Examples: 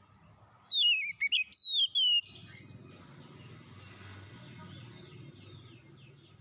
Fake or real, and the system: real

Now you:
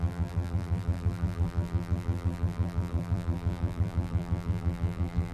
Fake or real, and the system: fake, vocoder, BigVGAN v2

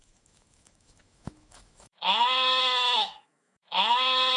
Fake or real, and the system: fake, autoencoder, DAC-VAE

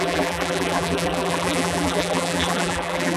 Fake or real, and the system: fake, vocoder, BigVGAN v2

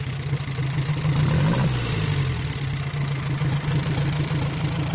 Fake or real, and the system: real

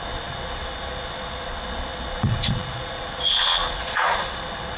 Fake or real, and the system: fake, vocoder, Vocos